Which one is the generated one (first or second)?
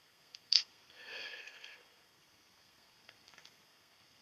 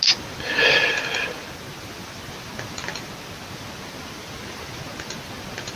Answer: first